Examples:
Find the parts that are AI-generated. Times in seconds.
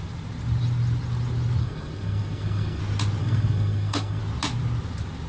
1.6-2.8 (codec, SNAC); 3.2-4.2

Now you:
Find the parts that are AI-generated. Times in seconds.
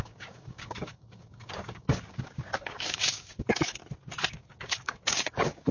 0.0-3.8 (codec, DAC); 4.3-5.7